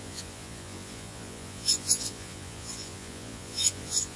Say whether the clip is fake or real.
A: fake